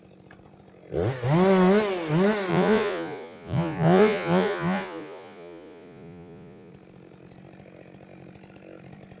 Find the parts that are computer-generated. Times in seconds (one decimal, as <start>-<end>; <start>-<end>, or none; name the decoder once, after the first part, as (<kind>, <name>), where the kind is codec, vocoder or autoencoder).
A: 2.5-6.7 (vocoder, Vocos)